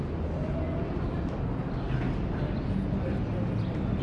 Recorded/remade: recorded